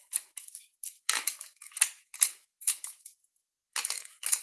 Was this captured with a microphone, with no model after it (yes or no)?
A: no